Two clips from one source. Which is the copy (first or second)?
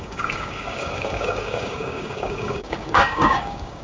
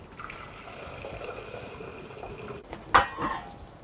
first